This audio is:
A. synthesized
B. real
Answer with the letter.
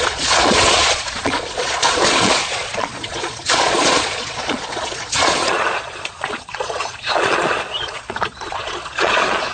A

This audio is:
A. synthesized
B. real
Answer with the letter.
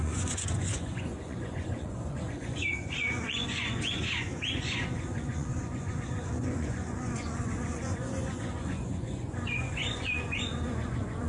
A